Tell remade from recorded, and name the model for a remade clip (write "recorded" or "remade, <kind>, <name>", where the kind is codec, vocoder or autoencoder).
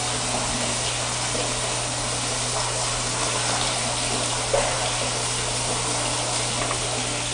recorded